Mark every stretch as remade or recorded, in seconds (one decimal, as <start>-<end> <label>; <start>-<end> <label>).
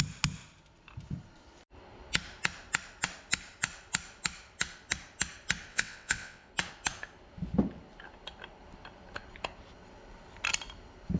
0.0-5.7 recorded; 5.7-6.5 remade; 6.5-11.2 recorded